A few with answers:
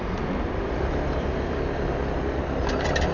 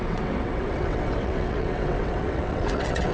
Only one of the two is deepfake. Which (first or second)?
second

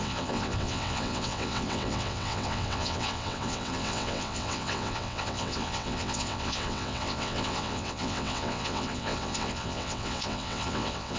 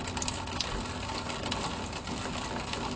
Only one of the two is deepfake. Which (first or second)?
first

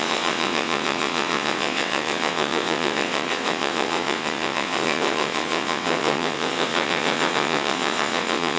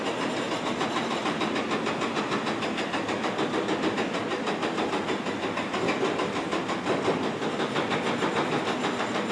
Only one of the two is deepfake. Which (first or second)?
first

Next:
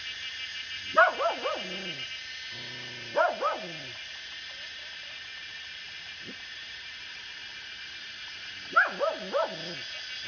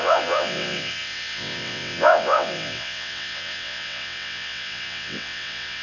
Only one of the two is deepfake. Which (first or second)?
second